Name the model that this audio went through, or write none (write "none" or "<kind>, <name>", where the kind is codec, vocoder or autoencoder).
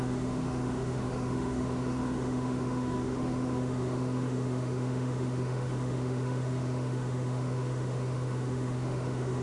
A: autoencoder, DAC-VAE